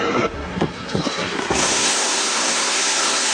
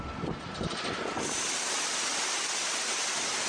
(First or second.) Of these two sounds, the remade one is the first